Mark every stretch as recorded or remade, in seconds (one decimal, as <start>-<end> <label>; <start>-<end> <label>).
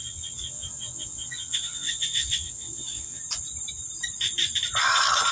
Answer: 0.0-3.2 remade; 3.2-5.3 recorded